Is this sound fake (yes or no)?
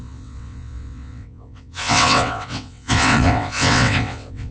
yes